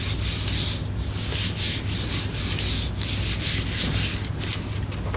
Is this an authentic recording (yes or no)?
yes